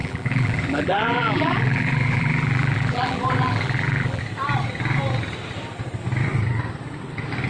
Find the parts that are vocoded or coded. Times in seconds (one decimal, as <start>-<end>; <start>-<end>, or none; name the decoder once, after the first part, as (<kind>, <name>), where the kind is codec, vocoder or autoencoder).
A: 0.0-4.2 (vocoder, BigVGAN v2)